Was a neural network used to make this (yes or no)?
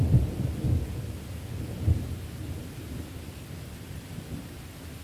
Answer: no